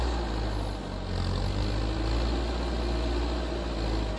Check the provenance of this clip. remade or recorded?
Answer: recorded